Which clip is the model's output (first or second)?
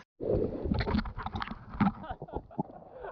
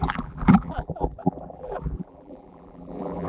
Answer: second